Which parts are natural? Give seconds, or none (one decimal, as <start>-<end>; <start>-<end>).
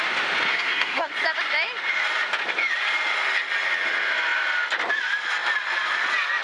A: 0.0-0.5; 1.1-6.4